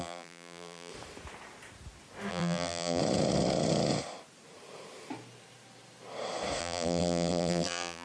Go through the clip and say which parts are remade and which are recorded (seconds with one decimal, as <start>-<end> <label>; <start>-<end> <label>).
0.0-0.9 remade; 0.9-2.3 recorded; 2.3-3.0 remade; 3.0-6.6 recorded; 6.6-8.0 remade